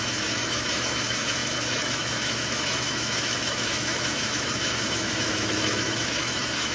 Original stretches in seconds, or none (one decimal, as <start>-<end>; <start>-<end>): none